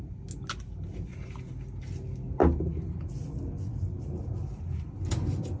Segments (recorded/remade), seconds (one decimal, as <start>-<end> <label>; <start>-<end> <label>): 0.0-5.6 recorded